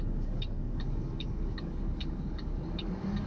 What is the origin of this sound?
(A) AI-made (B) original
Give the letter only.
A